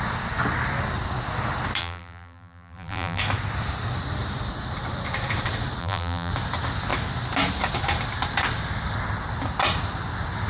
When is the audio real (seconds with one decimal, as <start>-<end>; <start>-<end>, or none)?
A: 0.0-1.8; 3.2-5.8; 6.3-10.5

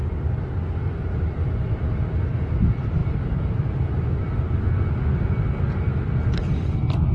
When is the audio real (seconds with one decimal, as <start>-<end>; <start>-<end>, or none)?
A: 0.0-7.1